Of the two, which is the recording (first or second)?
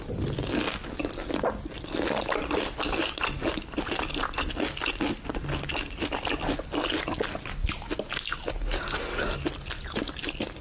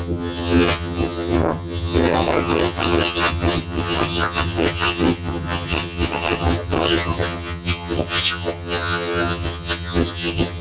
first